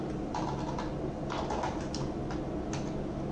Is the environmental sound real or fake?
real